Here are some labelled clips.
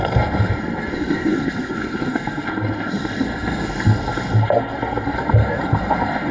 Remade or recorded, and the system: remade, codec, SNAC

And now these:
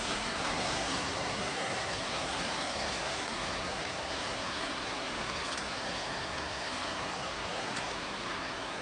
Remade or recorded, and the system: remade, codec, SNAC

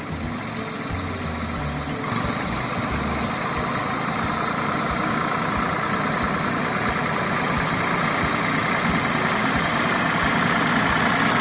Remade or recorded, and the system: recorded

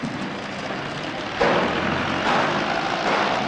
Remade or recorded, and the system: recorded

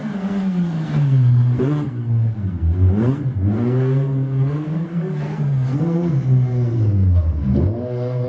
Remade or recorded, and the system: remade, codec, SNAC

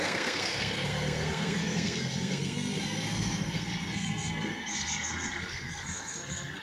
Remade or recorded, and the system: remade, codec, SNAC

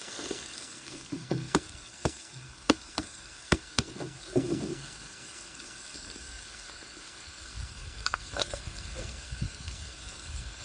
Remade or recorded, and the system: remade, codec, SNAC